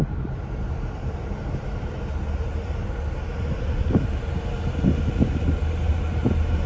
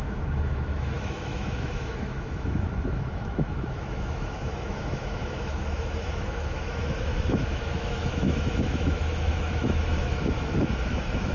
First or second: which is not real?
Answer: second